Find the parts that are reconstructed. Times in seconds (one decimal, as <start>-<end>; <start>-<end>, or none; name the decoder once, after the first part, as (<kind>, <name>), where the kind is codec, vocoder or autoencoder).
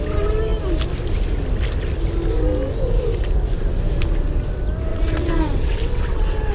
4.9-6.5 (vocoder, WaveNeXt)